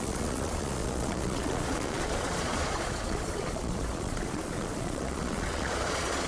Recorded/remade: remade